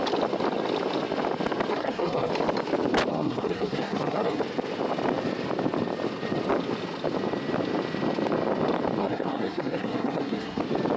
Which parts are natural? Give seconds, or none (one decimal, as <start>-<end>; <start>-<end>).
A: 0.0-1.7; 2.3-3.1; 4.4-9.0; 10.6-11.0